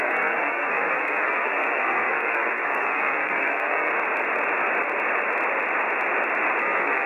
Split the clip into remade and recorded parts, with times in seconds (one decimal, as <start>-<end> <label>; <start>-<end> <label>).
0.0-3.9 remade; 3.9-6.6 recorded; 6.6-7.1 remade